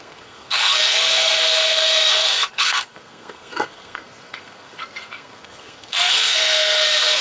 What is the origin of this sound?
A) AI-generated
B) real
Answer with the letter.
A